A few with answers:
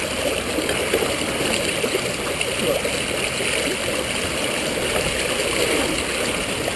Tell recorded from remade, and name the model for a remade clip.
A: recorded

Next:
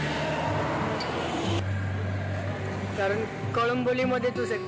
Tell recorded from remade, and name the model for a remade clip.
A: recorded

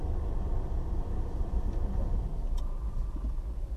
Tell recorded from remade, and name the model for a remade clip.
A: recorded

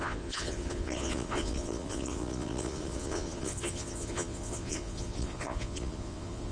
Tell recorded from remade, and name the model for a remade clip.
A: remade, vocoder, Vocos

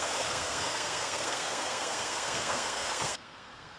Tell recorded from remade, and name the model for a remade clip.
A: remade, codec, SNAC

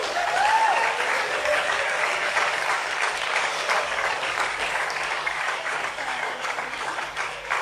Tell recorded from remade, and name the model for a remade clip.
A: remade, codec, DAC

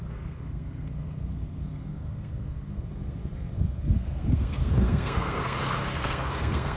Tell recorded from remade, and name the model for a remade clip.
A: remade, codec, SNAC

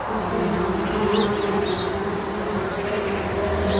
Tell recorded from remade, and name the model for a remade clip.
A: recorded